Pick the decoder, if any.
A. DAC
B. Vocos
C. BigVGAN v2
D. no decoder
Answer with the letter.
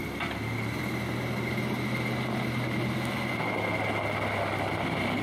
D